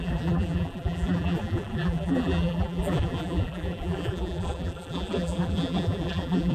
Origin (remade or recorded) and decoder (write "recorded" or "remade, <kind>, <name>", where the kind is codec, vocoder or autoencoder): remade, vocoder, BigVGAN v2